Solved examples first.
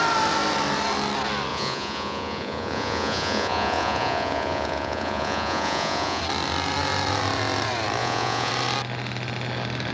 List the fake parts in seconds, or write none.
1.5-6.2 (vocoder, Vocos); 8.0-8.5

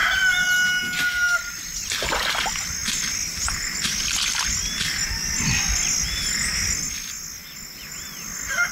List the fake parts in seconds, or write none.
none

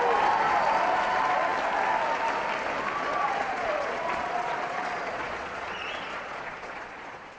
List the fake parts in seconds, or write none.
3.1-7.4 (vocoder, Vocos)

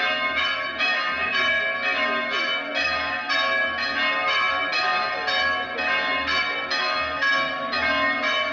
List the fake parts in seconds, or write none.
none

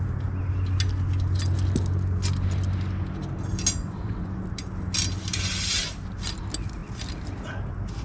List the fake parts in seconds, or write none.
3.8-4.4 (vocoder, Vocos)

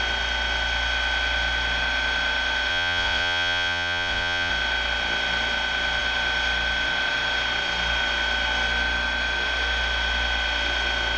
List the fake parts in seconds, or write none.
2.7-4.5 (vocoder, Vocos)

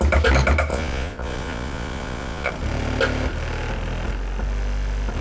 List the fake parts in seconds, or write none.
0.7-2.5 (vocoder, Vocos)